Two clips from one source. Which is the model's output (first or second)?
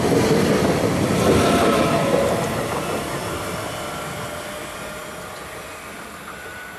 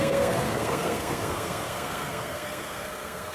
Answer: second